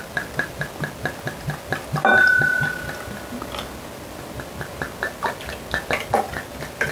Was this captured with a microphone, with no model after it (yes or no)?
yes